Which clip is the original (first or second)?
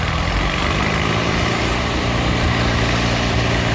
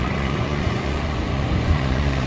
first